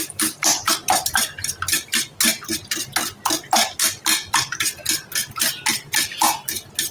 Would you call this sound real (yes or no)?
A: yes